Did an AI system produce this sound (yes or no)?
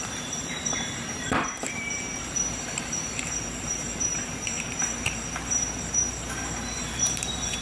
yes